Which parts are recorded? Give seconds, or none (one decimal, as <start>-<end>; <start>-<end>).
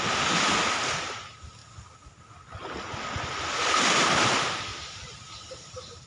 0.0-4.7